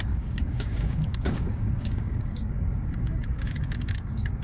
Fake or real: fake